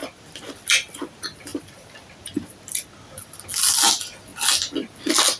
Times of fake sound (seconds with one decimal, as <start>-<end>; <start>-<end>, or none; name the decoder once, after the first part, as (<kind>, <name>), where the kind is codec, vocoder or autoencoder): 0.0-1.0 (vocoder, BigVGAN v2); 1.5-2.9